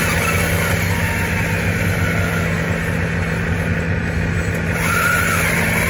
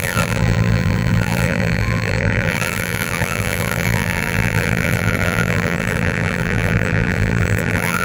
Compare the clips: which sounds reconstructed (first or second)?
second